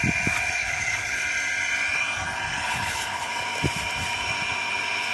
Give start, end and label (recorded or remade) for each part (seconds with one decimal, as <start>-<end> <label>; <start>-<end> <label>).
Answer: 0.0-0.6 recorded; 0.6-1.2 remade; 1.2-2.5 recorded; 2.5-3.3 remade; 3.3-5.1 recorded